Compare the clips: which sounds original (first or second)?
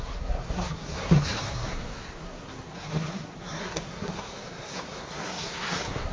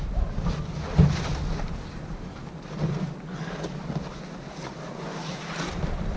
second